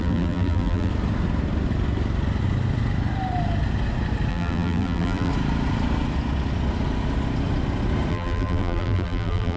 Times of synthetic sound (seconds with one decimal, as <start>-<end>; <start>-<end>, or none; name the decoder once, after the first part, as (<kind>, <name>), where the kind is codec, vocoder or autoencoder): 0.0-0.9 (vocoder, BigVGAN v2); 4.3-5.3; 8.1-9.6